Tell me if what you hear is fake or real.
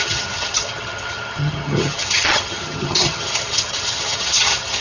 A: fake